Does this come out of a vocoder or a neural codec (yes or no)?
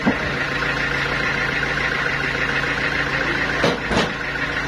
no